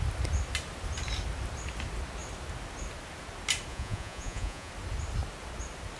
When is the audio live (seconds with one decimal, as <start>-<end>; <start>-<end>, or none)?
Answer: 0.0-3.7; 4.7-6.0